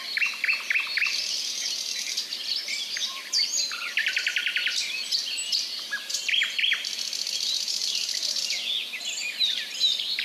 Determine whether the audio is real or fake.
fake